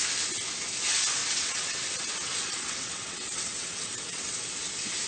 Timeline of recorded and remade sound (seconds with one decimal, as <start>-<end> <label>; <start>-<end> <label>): 0.0-1.2 recorded; 1.2-4.3 remade; 4.3-5.1 recorded